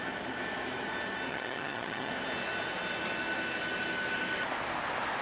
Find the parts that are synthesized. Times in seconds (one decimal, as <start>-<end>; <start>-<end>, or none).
1.3-2.1